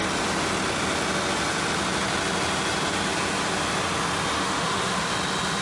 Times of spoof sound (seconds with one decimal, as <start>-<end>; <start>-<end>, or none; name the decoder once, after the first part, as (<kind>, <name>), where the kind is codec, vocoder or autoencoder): 4.3-5.1 (autoencoder, DAC-VAE)